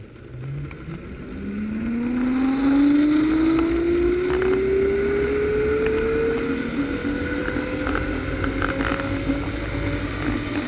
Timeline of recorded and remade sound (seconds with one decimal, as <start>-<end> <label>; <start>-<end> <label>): 0.0-10.7 recorded